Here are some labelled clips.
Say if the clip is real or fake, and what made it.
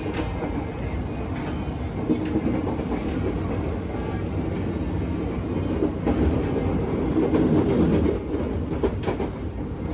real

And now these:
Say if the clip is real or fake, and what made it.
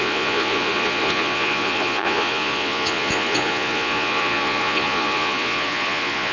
fake, vocoder, Vocos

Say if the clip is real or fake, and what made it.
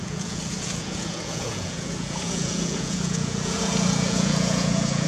fake, vocoder, Vocos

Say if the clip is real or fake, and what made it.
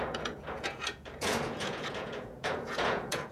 fake, vocoder, Vocos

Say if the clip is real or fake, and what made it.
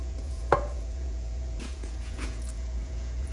fake, vocoder, Vocos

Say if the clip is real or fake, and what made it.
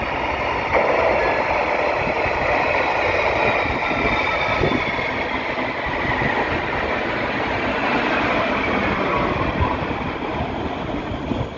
real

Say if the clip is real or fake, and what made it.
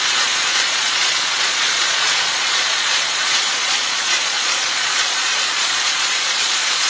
fake, vocoder, Vocos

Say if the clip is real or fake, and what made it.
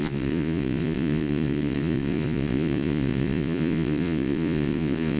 fake, vocoder, Vocos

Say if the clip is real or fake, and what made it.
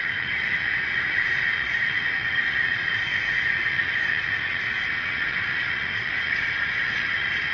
fake, vocoder, Vocos